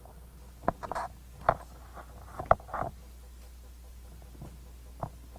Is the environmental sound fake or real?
real